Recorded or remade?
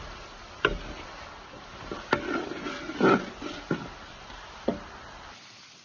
recorded